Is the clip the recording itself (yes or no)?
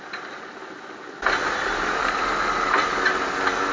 yes